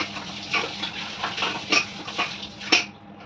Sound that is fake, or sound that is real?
real